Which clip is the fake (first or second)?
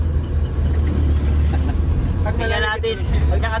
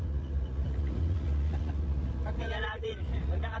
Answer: second